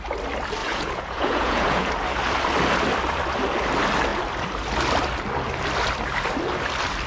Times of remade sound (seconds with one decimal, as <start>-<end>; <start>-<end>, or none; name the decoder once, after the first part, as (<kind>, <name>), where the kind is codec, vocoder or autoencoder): 0.6-1.9 (vocoder, Vocos)